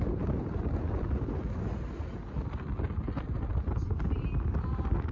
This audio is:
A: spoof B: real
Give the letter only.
B